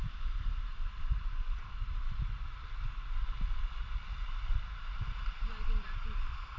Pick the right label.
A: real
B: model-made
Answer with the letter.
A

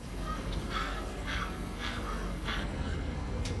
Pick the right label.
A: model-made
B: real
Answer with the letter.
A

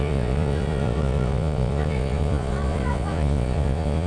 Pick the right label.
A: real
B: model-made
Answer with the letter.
B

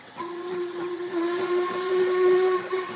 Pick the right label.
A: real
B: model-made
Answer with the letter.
B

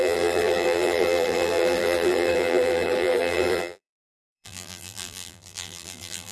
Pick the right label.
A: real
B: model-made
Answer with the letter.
B